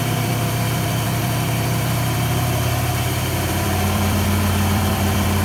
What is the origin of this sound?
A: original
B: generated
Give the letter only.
B